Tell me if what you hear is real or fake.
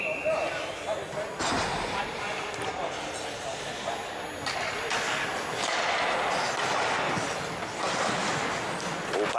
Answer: real